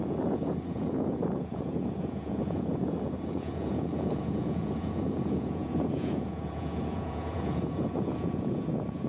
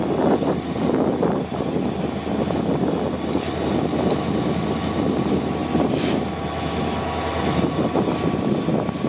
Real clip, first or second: second